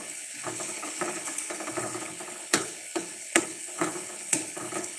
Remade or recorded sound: remade